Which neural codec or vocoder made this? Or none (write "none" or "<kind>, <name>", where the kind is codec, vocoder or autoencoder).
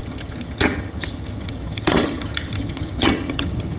vocoder, HiFi-GAN